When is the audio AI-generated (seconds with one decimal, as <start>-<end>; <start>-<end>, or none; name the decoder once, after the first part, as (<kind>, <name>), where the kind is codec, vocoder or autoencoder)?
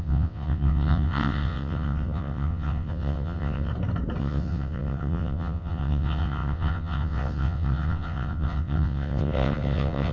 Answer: 0.0-3.7 (vocoder, WaveNeXt); 4.2-10.1